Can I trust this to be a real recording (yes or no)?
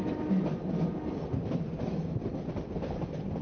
yes